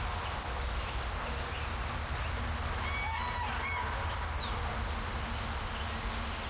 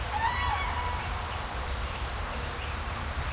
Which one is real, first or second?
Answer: first